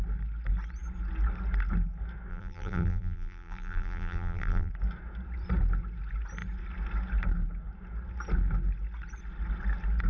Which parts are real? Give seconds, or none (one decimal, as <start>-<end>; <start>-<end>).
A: 0.0-2.3; 4.7-10.1